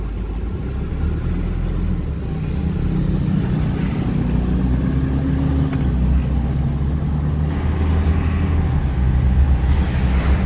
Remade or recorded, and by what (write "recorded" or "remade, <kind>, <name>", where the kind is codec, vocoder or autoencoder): recorded